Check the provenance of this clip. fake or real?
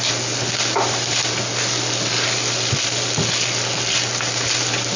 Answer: real